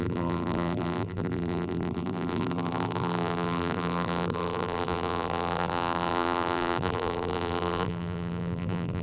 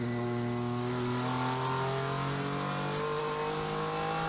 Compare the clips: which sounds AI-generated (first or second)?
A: first